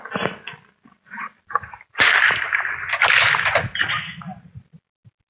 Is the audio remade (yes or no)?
no